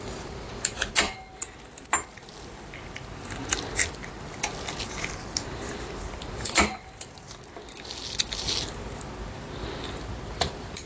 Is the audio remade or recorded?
recorded